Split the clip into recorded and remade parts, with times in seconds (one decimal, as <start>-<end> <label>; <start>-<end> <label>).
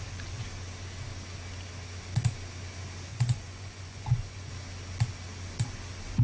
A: 0.0-3.1 recorded; 3.1-4.5 remade; 4.5-6.2 recorded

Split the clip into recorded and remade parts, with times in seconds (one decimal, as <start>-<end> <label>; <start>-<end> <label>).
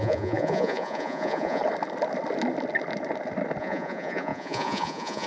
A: 0.0-1.6 remade; 1.6-3.6 recorded; 3.6-5.3 remade